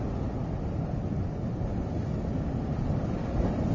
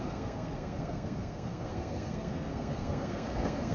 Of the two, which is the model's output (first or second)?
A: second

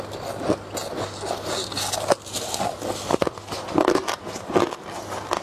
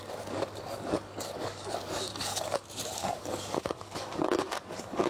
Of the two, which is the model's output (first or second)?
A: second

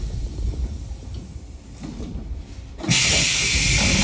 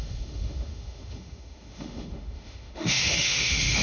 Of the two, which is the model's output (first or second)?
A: second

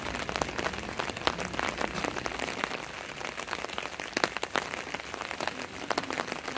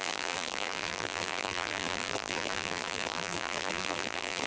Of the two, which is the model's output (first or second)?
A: second